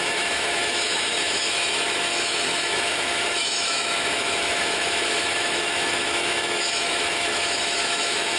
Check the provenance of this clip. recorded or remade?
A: remade